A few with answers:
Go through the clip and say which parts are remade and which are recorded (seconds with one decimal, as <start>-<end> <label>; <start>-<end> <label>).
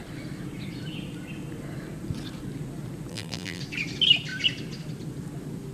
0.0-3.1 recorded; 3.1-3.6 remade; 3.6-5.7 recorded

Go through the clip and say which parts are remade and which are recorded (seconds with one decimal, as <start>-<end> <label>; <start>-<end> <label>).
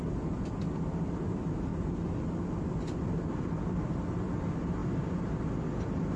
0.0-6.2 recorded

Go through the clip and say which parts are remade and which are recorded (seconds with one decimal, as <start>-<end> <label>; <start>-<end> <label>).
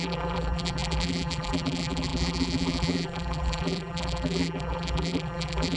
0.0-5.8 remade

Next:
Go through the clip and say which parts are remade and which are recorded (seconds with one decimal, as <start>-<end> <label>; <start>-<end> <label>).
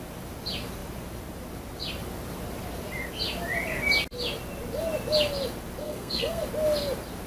0.0-5.8 recorded; 5.8-6.4 remade; 6.4-7.3 recorded